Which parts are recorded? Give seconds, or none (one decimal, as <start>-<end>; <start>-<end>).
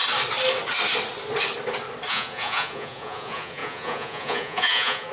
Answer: 0.0-2.1